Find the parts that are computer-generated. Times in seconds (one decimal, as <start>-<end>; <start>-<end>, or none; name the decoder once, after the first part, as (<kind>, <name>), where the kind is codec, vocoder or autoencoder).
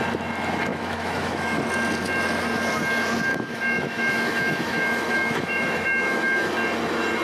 0.7-1.6 (autoencoder, DAC-VAE); 3.3-6.5